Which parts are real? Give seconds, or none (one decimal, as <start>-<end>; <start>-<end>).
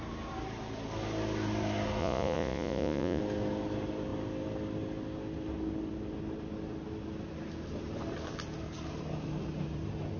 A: 0.0-2.0; 3.2-10.2